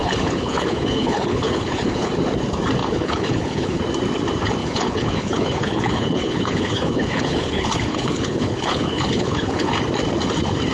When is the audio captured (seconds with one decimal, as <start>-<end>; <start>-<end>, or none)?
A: 2.1-2.8; 3.8-4.6; 9.7-10.7

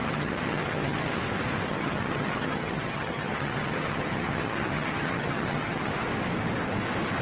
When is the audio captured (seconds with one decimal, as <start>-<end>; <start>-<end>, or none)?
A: 1.2-1.7; 5.9-7.2

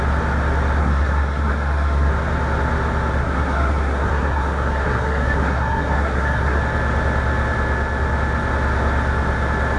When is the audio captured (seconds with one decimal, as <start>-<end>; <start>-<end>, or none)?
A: 0.0-0.8; 2.1-3.2; 6.6-9.8

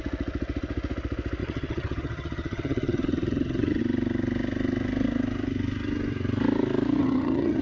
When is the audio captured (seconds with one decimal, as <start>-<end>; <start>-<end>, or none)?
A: 0.0-1.4; 3.8-7.0

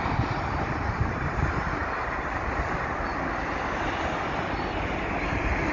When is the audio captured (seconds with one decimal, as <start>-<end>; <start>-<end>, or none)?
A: 1.8-5.2

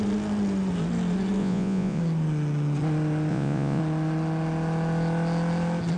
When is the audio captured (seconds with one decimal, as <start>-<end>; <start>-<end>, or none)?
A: 0.0-1.4; 2.0-3.3; 3.8-6.0

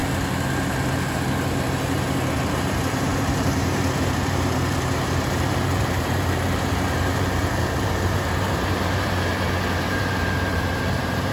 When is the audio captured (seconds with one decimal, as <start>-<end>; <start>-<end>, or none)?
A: 0.0-2.5; 9.3-9.9